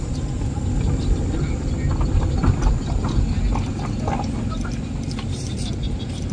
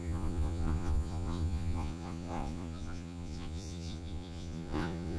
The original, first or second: first